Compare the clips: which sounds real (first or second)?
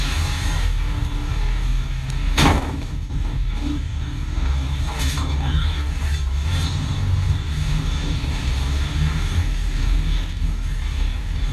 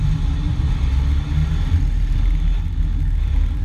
second